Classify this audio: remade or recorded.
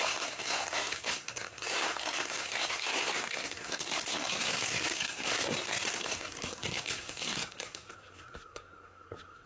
remade